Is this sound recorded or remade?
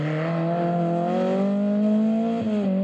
recorded